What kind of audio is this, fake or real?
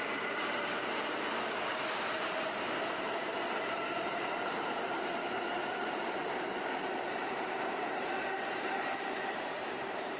fake